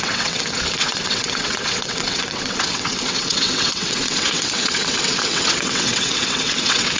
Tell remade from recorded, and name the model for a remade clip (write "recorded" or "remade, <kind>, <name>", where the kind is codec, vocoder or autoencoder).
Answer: remade, vocoder, WaveNeXt